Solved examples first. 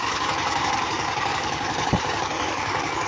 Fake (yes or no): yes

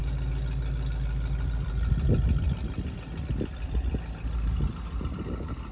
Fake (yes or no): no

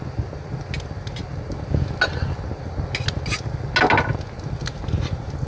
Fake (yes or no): no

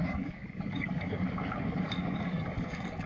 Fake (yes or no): yes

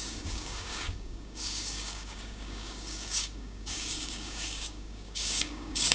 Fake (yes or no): yes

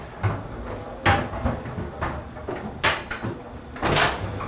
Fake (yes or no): no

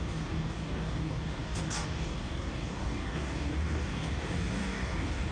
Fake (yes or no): yes